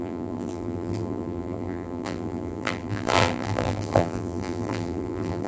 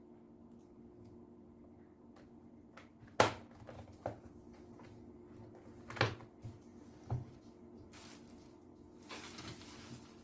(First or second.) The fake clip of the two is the first